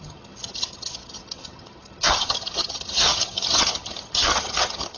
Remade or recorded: remade